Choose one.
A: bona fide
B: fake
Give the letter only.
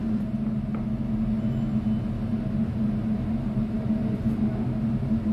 A